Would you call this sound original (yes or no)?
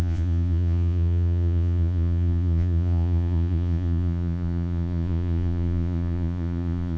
no